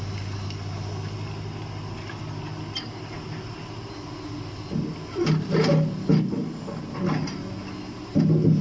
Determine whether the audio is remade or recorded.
recorded